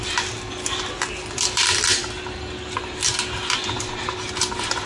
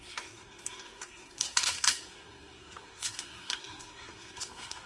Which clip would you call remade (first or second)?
second